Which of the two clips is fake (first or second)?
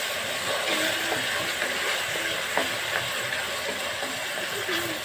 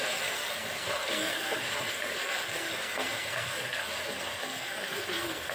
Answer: second